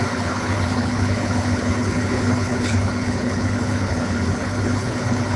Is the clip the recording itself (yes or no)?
no